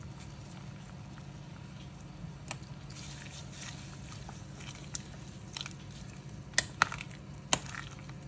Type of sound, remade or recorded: recorded